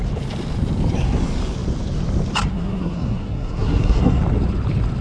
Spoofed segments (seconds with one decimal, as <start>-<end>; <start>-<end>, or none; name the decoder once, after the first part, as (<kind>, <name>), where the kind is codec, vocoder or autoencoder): 2.5-4.2 (codec, SNAC)

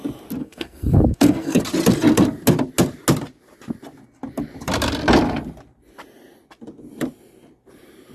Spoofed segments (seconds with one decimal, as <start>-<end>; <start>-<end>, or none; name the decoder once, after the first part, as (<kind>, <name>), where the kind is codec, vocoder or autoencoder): 0.4-1.6 (codec, SNAC)